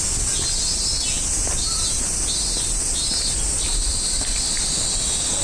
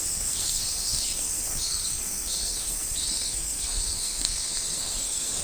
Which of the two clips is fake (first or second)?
second